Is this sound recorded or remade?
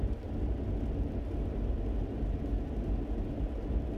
recorded